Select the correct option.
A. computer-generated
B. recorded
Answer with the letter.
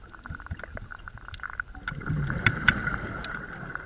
B